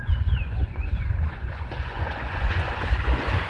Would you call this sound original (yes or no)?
no